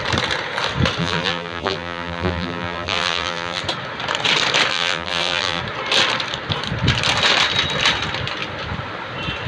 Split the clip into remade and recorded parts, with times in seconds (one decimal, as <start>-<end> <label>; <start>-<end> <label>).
0.0-1.0 recorded; 1.0-3.6 remade; 3.6-4.7 recorded; 4.7-5.6 remade; 5.6-9.5 recorded